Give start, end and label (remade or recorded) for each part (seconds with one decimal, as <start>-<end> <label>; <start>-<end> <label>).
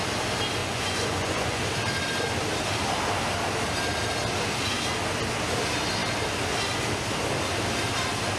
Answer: 0.0-0.6 recorded; 0.6-1.6 remade; 1.6-8.4 recorded